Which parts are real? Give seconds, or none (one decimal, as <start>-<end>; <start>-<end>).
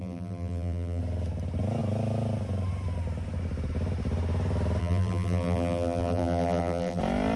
1.0-4.8; 7.0-7.4